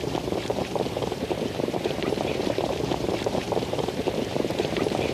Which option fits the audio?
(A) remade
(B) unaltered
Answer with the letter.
A